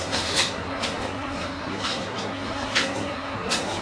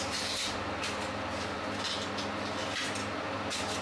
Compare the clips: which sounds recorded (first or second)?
second